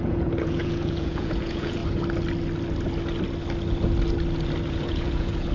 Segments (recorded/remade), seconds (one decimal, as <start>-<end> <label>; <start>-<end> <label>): 0.0-1.8 remade; 1.8-4.7 recorded; 4.7-5.5 remade